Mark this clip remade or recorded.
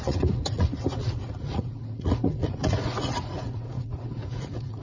remade